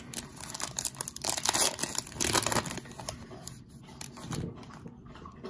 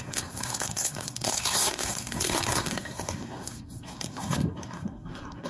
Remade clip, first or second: second